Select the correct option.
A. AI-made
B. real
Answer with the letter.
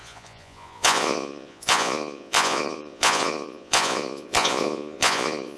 A